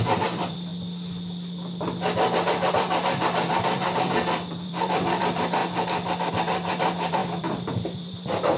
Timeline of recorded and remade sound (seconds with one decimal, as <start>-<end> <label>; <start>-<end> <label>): 0.0-0.7 remade; 0.7-2.7 recorded; 2.7-5.6 remade; 5.6-6.3 recorded; 6.3-8.6 remade